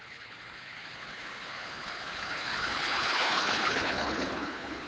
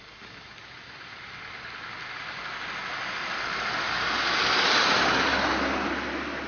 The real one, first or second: second